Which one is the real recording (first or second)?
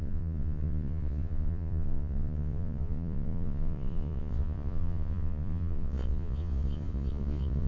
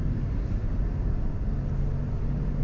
second